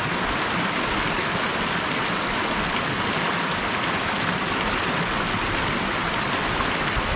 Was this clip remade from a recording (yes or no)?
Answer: no